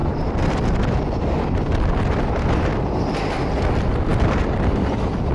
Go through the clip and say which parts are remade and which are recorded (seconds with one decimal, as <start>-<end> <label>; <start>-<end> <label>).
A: 0.0-1.8 remade; 1.8-4.1 recorded; 4.1-5.3 remade